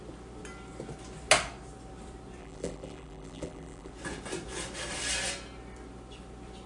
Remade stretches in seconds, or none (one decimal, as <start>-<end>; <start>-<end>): 2.4-3.9